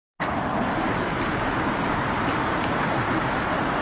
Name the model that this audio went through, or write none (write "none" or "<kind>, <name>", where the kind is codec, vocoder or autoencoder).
none